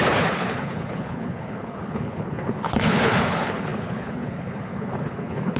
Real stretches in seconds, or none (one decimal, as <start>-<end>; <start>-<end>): none